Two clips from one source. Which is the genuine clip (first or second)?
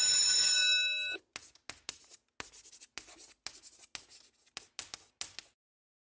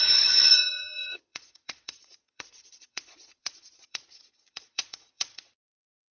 first